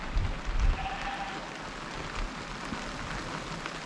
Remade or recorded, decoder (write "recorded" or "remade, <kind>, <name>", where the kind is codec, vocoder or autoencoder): recorded